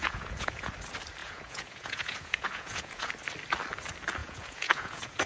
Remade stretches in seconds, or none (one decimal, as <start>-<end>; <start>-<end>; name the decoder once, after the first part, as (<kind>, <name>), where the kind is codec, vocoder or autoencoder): 0.0-0.7 (vocoder, Vocos); 1.2-3.1; 4.2-5.3